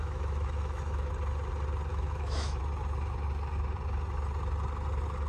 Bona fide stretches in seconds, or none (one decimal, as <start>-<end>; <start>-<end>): 1.1-1.9; 2.6-5.3